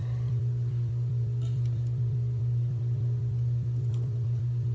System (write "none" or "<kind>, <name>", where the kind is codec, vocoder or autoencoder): vocoder, BigVGAN v2